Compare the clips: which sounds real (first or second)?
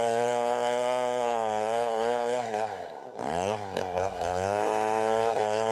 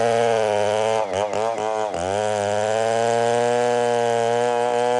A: second